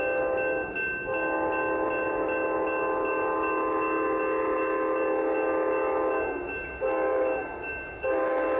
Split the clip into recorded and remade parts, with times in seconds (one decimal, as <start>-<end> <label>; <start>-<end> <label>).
0.0-8.6 recorded